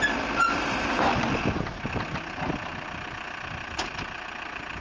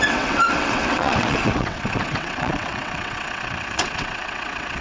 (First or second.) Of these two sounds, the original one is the first